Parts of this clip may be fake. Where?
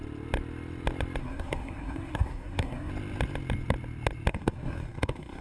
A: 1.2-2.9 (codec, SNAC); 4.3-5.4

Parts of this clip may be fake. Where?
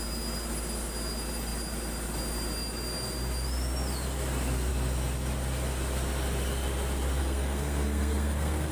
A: 7.2-8.7 (codec, SNAC)